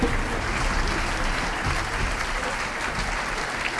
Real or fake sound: real